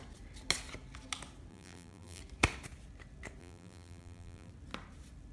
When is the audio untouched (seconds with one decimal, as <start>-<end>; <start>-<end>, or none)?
0.0-1.5; 2.2-3.4; 4.5-5.3